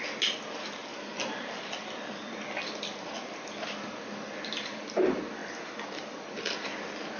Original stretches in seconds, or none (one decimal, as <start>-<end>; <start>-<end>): 0.0-7.2

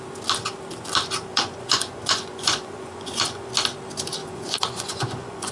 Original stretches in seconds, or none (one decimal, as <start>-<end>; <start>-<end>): 0.0-1.3; 3.5-4.2

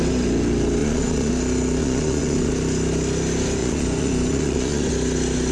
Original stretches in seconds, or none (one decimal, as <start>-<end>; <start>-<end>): 0.0-0.8; 1.3-1.8; 2.5-3.6; 4.9-5.5

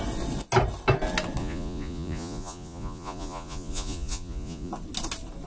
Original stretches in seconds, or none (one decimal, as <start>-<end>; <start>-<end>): 0.0-1.4; 4.7-5.5

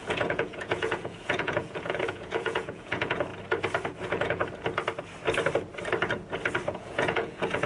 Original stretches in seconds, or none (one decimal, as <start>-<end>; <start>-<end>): 3.3-4.0; 4.4-6.7

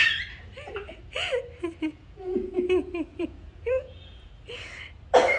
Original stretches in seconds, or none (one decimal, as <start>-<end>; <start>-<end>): 0.0-1.9; 2.6-3.1; 4.3-5.4